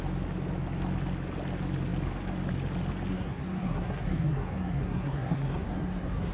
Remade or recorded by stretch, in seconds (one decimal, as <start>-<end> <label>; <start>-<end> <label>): 0.0-3.1 recorded; 3.1-6.3 remade